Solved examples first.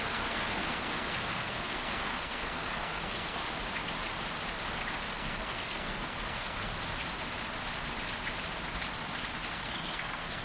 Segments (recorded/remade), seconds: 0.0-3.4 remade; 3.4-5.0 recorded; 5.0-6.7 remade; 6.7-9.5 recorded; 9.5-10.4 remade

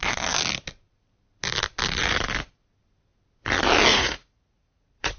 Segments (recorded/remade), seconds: 0.0-3.9 recorded; 3.9-5.2 remade

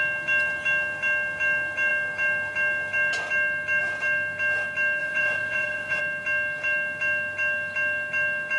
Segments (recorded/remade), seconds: 0.0-5.0 recorded; 5.0-6.0 remade; 6.0-8.6 recorded

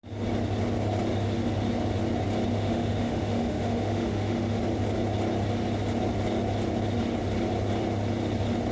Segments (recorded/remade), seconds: 0.0-2.5 recorded; 2.5-4.6 remade; 4.6-8.7 recorded

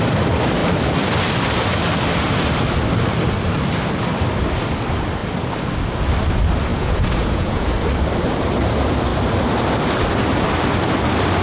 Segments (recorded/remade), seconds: 0.0-6.7 recorded; 6.7-7.7 remade; 7.7-11.4 recorded

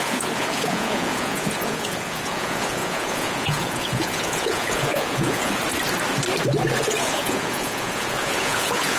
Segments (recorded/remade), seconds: 0.0-5.6 remade; 5.6-6.8 recorded; 6.8-9.0 remade

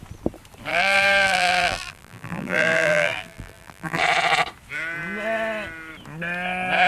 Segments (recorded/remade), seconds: 0.0-0.7 recorded; 0.7-4.0 remade; 4.0-6.9 recorded

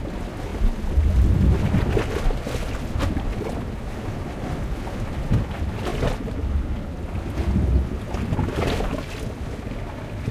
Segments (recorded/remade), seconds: 0.0-10.3 recorded